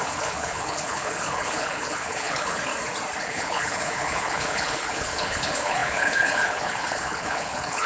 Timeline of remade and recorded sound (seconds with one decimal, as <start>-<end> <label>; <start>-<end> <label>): 0.0-2.7 remade; 2.7-3.2 recorded; 3.2-7.9 remade